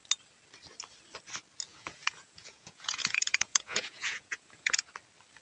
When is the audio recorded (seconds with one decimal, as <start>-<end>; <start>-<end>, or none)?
0.0-1.7; 4.9-5.4